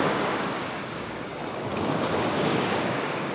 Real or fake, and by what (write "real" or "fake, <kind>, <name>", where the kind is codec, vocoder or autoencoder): fake, codec, DAC